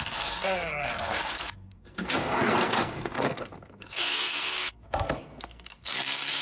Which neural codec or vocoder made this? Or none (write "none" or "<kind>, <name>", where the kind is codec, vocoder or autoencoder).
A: codec, SNAC